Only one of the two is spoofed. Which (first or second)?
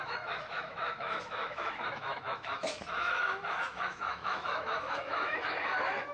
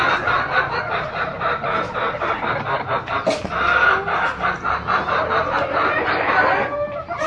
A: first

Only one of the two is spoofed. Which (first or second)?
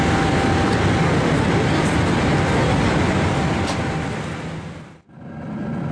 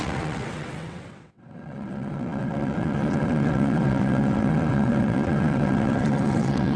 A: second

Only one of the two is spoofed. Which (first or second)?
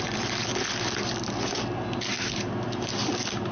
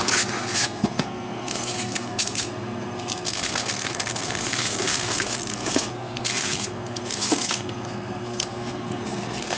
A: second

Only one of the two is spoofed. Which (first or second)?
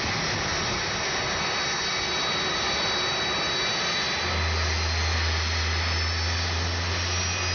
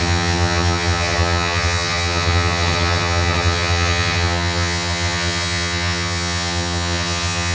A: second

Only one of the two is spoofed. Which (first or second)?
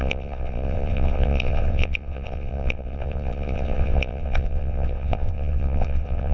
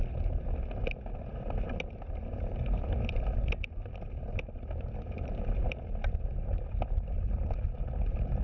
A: first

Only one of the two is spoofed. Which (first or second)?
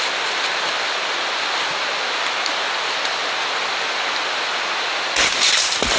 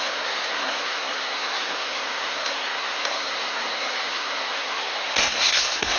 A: second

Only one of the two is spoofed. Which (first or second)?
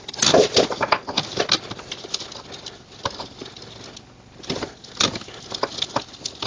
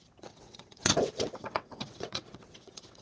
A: second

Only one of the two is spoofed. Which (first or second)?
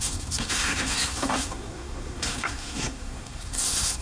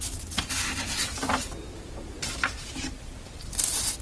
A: first